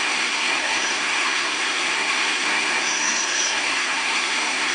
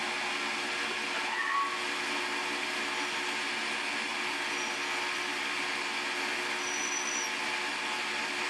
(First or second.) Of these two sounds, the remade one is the first